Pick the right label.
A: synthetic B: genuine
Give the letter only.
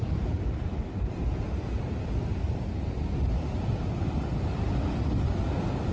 B